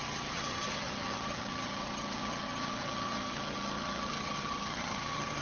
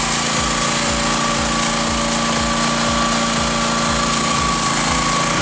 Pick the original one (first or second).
second